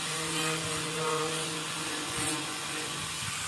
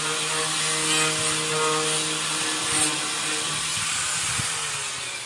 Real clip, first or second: second